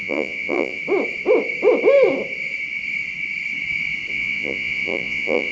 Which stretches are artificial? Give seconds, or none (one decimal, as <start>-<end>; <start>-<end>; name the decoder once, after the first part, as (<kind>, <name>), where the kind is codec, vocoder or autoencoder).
0.0-0.8 (vocoder, Vocos); 4.1-5.5

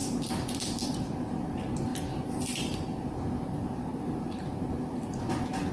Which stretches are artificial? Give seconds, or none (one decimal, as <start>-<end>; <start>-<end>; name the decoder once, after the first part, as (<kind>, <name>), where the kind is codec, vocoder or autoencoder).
none

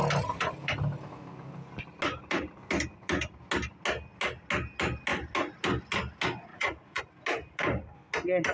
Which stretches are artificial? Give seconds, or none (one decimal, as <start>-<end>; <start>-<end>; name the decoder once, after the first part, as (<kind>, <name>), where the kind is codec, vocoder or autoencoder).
6.5-7.0 (vocoder, Vocos)